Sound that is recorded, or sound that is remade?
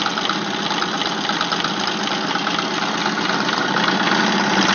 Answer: recorded